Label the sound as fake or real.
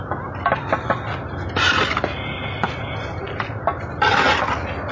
real